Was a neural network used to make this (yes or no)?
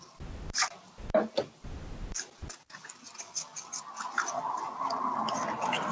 no